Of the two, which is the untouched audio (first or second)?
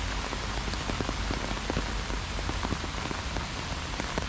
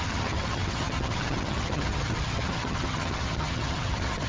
first